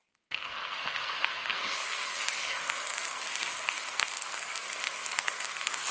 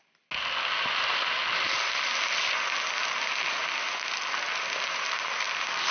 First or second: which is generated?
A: first